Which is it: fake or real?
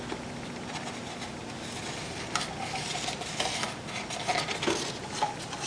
real